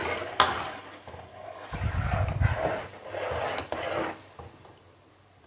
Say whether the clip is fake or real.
real